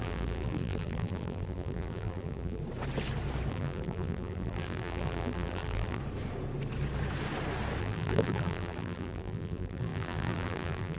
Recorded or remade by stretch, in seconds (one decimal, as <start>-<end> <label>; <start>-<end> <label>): 0.0-2.6 remade; 2.6-3.5 recorded; 3.5-6.0 remade; 6.0-7.8 recorded; 7.8-11.0 remade